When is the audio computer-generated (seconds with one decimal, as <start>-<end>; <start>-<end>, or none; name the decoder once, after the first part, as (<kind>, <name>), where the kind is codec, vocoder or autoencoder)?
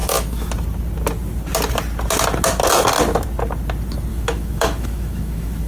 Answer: 0.0-0.5 (autoencoder, DAC-VAE); 4.1-5.7